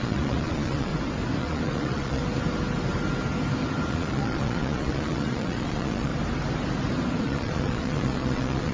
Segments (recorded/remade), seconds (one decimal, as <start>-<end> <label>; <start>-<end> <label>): 0.0-0.9 remade; 0.9-1.4 recorded; 1.4-2.2 remade; 2.2-3.9 recorded; 3.9-6.1 remade; 6.1-7.2 recorded; 7.2-8.7 remade